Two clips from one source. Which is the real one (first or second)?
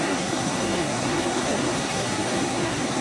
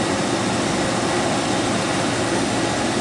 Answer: second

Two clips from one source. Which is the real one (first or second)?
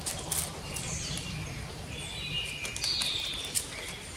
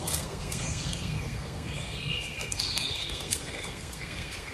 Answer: first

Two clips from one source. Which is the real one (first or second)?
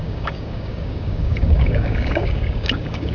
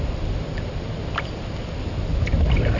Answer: second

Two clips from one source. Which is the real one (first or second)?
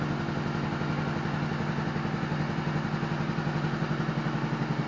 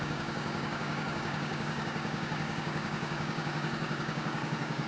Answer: first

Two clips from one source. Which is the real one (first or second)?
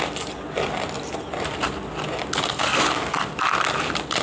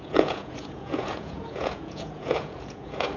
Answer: first